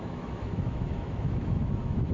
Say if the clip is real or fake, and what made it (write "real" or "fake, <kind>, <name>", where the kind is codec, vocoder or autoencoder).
fake, autoencoder, DAC-VAE